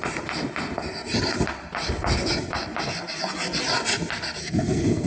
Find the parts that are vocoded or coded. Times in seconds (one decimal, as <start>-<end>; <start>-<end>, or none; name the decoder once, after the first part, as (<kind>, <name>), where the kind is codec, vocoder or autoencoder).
4.4-5.1 (codec, SNAC)